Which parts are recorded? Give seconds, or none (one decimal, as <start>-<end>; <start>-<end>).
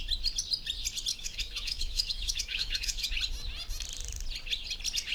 0.0-1.1; 3.1-5.1